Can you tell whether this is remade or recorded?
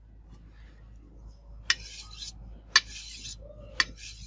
recorded